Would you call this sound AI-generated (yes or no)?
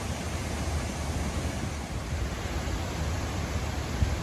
no